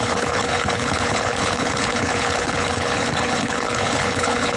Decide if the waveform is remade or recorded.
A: remade